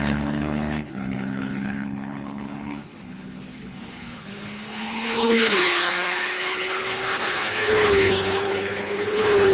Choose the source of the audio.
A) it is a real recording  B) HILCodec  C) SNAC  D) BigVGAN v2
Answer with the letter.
B